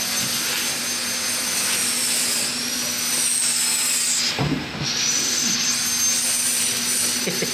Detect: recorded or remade recorded